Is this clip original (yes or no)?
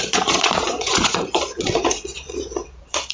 no